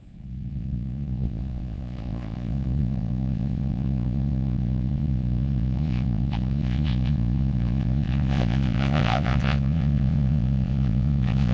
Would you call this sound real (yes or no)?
no